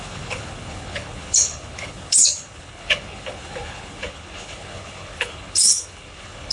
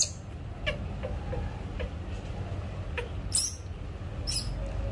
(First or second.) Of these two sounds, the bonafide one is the second